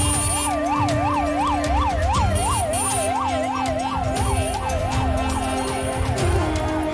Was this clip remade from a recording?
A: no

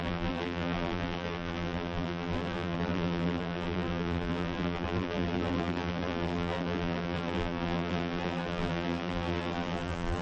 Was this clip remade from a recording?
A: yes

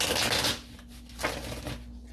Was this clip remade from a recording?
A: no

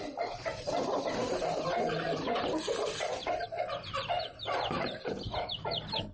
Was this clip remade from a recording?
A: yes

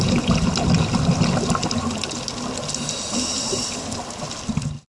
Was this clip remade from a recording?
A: no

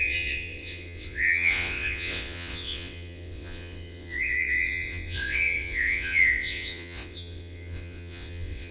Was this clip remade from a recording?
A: yes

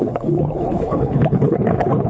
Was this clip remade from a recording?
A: yes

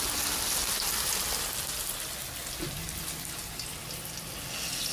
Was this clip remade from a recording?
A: no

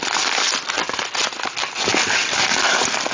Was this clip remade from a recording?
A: no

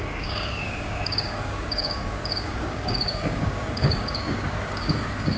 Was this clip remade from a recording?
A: yes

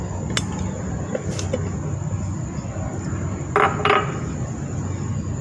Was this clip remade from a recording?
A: no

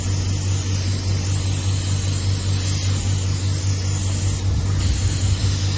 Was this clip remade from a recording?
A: no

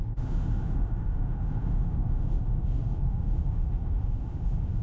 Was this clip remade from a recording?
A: yes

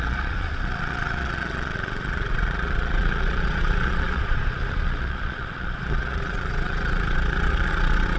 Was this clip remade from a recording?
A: yes